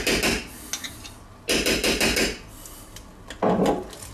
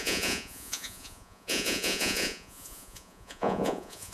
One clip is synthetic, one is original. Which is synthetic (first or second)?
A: second